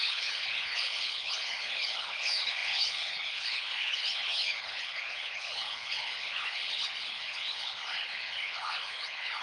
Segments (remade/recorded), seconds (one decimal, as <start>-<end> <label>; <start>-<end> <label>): 0.0-9.4 remade

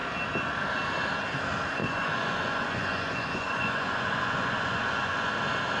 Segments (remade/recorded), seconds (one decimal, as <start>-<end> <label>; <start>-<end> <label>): 0.0-1.8 recorded; 1.8-5.3 remade; 5.3-5.8 recorded

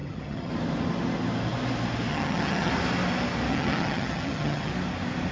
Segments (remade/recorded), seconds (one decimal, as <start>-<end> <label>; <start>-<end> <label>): 0.0-0.5 remade; 0.5-2.1 recorded; 2.1-2.7 remade; 2.7-3.5 recorded; 3.5-4.7 remade; 4.7-5.3 recorded

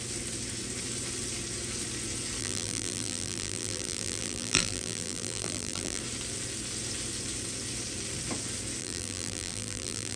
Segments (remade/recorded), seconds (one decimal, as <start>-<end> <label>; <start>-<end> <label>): 0.0-2.4 recorded; 2.4-6.0 remade; 6.0-8.8 recorded; 8.8-10.2 remade

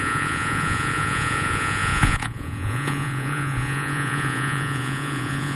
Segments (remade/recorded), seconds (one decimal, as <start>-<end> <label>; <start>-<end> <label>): 0.0-5.6 remade

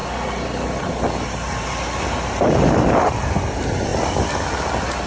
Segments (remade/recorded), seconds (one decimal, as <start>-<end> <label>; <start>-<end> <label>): 0.0-5.1 recorded